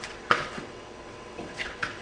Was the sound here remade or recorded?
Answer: remade